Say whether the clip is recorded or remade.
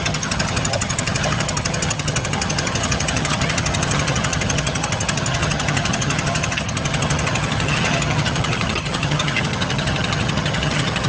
remade